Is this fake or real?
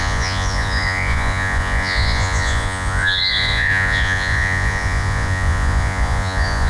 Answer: fake